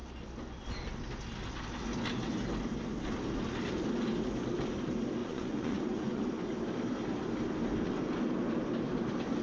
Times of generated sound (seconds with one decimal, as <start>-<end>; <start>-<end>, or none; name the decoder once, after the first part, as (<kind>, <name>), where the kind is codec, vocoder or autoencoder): 5.2-6.2 (vocoder, Vocos)